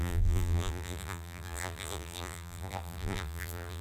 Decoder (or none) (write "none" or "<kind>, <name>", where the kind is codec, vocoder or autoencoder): vocoder, BigVGAN v2